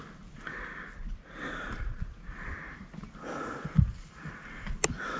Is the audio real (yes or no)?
yes